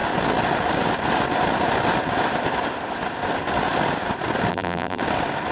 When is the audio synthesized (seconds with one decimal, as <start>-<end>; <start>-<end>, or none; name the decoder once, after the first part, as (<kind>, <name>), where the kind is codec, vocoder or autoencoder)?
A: 4.5-5.0 (vocoder, BigVGAN v2)